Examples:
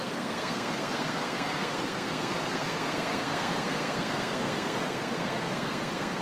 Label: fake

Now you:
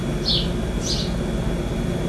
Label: real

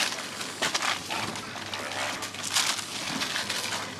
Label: real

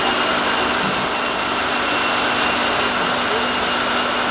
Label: real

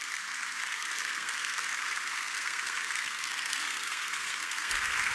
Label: fake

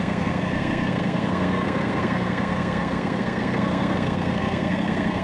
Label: fake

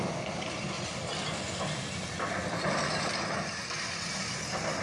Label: real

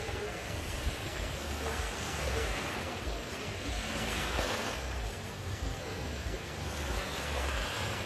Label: fake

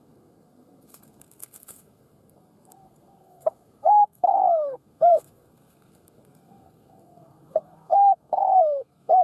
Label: fake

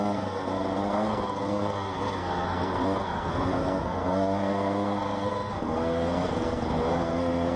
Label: fake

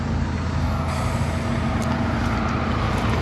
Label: real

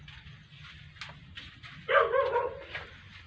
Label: real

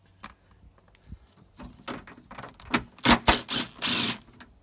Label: real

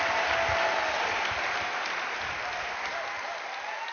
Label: real